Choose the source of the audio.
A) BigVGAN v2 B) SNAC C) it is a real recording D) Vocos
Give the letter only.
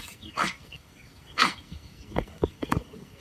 B